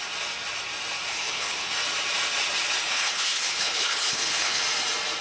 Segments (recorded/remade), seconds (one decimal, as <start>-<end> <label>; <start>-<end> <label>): 0.0-1.1 recorded; 1.1-1.7 remade; 1.7-2.9 recorded; 2.9-4.6 remade; 4.6-5.2 recorded